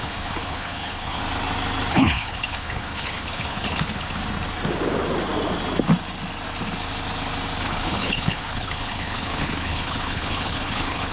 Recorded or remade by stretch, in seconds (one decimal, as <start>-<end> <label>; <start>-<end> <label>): 0.0-1.2 remade; 1.2-1.9 recorded; 1.9-4.2 remade; 4.2-7.6 recorded; 7.6-11.1 remade

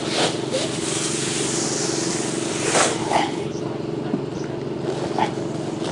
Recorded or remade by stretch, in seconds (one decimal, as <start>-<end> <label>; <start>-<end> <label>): 0.0-3.0 recorded; 3.0-3.6 remade; 3.6-5.9 recorded

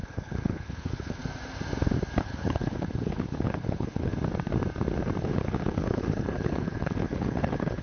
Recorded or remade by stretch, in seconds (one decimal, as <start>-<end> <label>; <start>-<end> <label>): 0.0-1.2 remade; 1.2-2.2 recorded; 2.2-4.1 remade; 4.1-5.2 recorded; 5.2-7.8 remade

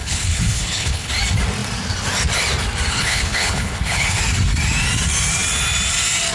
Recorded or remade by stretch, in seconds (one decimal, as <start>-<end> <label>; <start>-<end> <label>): 0.0-1.1 remade; 1.1-2.9 recorded; 2.9-4.2 remade; 4.2-6.3 recorded

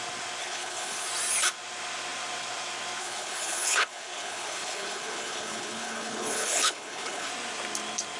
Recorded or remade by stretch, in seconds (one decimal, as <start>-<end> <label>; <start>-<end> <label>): 0.0-0.4 recorded; 0.4-1.1 remade; 1.1-3.0 recorded; 3.0-7.3 remade; 7.3-8.2 recorded